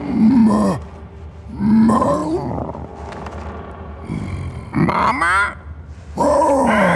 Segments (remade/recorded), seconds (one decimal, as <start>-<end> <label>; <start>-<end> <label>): 0.0-0.4 remade; 0.4-1.6 recorded; 1.6-2.2 remade; 2.2-6.3 recorded; 6.3-7.0 remade